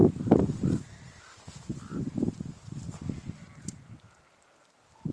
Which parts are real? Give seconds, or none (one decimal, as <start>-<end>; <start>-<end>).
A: 0.6-5.1

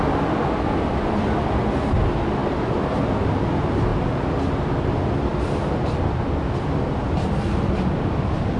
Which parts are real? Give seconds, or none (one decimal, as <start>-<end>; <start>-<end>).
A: 0.0-5.3; 7.0-8.6

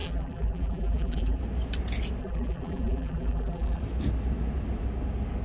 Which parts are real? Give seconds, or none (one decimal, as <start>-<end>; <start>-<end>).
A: 1.4-2.2; 3.8-5.4

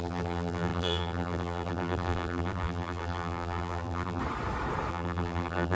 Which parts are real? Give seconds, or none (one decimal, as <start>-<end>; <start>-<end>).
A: 4.2-4.9